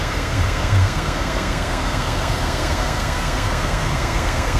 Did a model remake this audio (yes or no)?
yes